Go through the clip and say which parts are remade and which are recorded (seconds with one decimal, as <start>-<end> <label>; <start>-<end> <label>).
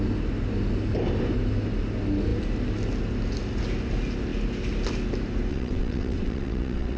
0.0-5.5 recorded; 5.5-7.0 remade